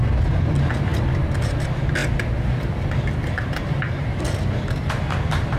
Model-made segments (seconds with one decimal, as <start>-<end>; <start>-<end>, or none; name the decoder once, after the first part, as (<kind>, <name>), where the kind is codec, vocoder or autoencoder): none